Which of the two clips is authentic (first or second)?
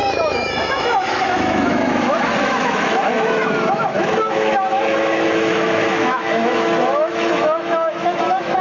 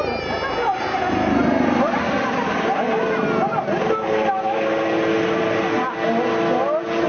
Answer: second